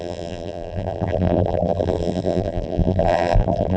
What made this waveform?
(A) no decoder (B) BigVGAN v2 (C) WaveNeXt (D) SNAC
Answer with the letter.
B